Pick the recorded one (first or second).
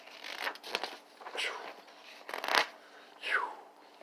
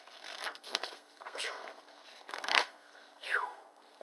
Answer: first